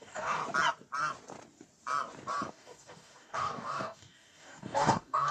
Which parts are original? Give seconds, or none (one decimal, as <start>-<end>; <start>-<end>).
0.4-2.5